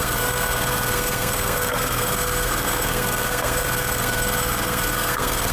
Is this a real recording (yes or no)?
no